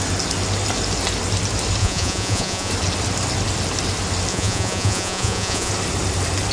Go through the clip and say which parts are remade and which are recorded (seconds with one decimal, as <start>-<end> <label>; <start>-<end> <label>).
0.0-1.8 recorded; 1.8-2.7 remade; 2.7-4.3 recorded; 4.3-5.7 remade; 5.7-6.5 recorded